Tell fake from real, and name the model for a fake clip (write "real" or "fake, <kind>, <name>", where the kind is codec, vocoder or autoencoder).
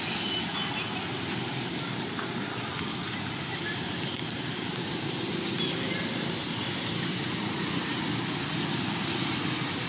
real